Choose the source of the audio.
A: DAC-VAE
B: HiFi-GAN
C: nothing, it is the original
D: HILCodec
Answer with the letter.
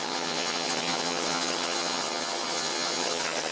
B